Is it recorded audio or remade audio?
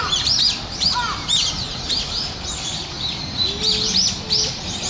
recorded